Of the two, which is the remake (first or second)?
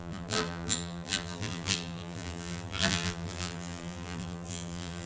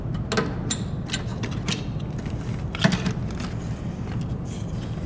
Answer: first